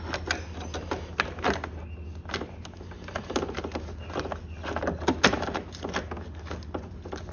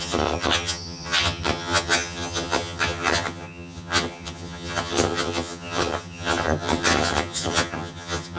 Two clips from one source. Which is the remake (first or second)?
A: second